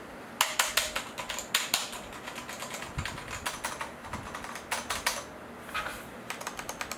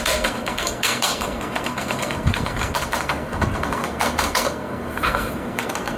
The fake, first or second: second